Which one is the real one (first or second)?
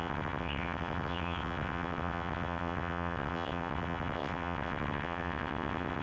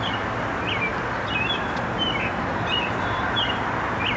second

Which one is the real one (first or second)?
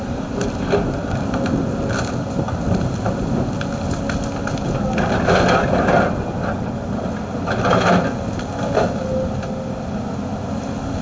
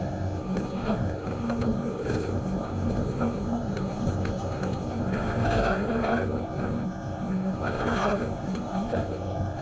first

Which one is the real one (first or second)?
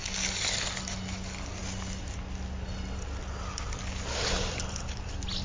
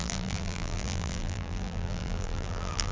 first